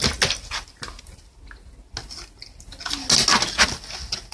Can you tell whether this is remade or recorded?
recorded